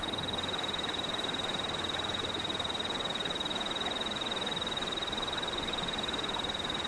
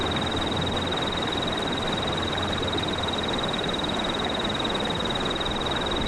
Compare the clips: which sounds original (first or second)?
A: second